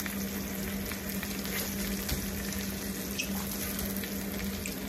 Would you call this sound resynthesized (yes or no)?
no